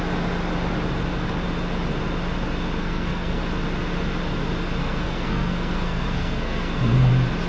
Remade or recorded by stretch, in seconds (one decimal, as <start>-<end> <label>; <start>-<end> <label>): 0.0-2.8 recorded; 2.8-3.4 remade; 3.4-4.8 recorded; 4.8-7.1 remade; 7.1-7.5 recorded